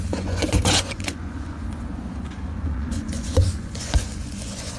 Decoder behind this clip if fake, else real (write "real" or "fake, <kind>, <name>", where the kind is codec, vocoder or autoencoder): fake, vocoder, Vocos